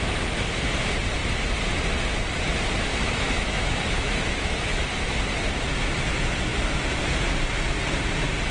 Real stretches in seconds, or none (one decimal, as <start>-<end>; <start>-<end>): 0.0-2.9; 5.2-8.5